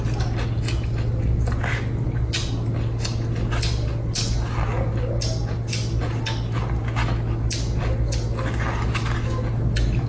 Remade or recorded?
recorded